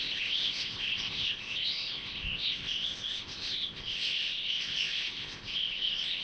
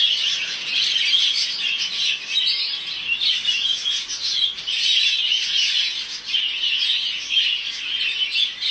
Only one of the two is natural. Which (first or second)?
second